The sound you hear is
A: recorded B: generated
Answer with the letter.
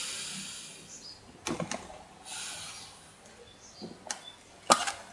A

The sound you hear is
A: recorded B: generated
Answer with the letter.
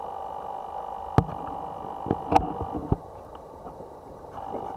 A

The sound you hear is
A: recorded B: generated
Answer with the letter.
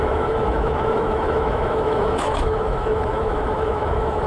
B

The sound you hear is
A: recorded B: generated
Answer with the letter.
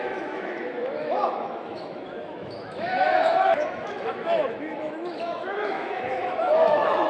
B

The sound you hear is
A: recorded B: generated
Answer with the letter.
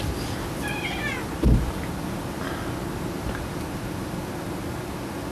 A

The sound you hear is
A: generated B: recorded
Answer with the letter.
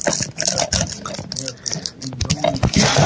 B